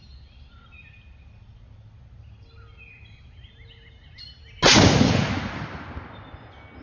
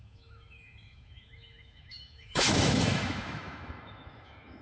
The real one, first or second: first